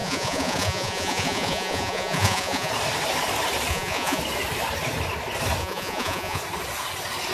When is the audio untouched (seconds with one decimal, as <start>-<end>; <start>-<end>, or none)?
2.7-3.7; 4.2-5.6; 6.4-7.3